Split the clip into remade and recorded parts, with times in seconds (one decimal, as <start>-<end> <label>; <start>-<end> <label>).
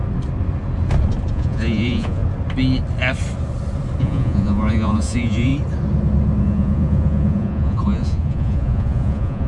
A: 0.0-1.3 recorded; 1.3-2.2 remade; 2.2-4.0 recorded; 4.0-5.5 remade; 5.5-6.4 recorded; 6.4-9.5 remade